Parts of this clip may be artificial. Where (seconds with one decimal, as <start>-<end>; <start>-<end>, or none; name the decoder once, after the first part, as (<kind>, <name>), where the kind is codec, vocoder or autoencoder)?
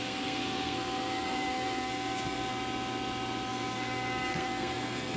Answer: 0.0-2.5 (codec, SNAC); 3.5-5.2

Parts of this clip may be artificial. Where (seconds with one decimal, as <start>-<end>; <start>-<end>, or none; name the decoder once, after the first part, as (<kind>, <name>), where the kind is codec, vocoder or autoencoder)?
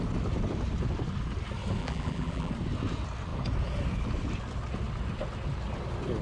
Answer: 1.8-2.5 (vocoder, BigVGAN v2)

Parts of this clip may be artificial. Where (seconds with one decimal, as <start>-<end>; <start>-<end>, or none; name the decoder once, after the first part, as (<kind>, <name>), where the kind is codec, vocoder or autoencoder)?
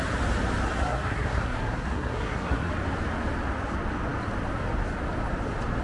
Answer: 0.8-2.7 (codec, SNAC)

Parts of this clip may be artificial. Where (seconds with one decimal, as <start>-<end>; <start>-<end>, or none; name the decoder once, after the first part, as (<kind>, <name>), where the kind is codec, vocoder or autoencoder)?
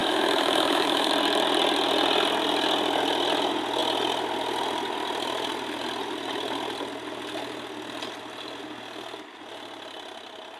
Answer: 0.0-1.1 (autoencoder, DAC-VAE)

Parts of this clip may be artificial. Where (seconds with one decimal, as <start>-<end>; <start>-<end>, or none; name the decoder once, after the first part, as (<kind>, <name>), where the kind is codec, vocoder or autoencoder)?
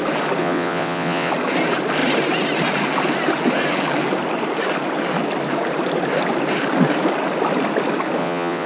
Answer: 0.4-1.3 (vocoder, WaveNeXt); 8.2-8.7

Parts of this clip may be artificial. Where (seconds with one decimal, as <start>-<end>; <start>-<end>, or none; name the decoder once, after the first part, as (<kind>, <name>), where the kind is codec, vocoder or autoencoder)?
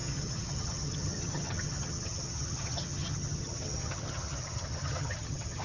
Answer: 0.0-5.6 (vocoder, HiFi-GAN)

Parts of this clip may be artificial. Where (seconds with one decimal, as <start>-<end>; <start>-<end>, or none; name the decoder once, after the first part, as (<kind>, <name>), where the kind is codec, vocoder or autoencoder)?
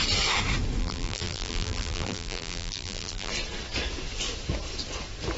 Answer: 0.8-3.3 (vocoder, BigVGAN v2)